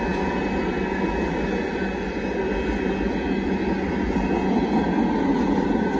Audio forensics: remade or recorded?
recorded